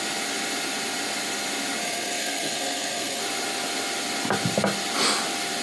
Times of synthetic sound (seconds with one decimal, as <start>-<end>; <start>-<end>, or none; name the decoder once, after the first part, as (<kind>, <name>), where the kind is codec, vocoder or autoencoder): 1.8-3.2 (codec, SNAC)